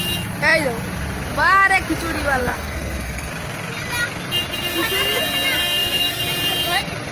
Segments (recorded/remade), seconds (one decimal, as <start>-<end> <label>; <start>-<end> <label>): 0.0-2.4 recorded; 2.4-3.3 remade; 3.3-5.6 recorded; 5.6-6.2 remade; 6.2-7.1 recorded